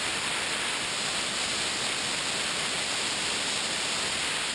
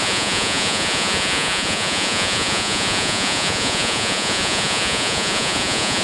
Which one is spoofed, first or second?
second